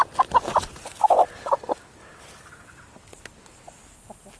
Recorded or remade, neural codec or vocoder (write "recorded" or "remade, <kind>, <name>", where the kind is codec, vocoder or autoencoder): recorded